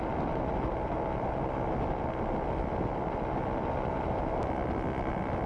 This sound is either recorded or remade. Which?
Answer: recorded